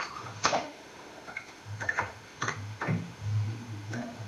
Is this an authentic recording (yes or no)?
no